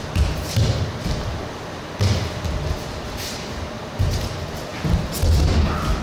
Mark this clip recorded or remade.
recorded